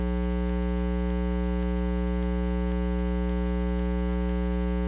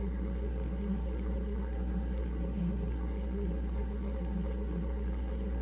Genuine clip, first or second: first